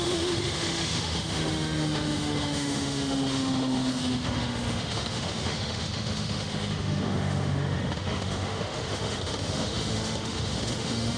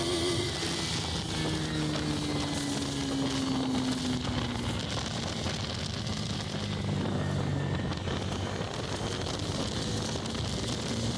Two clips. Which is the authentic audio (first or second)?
second